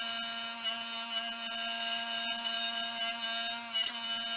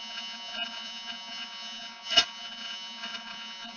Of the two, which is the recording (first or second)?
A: first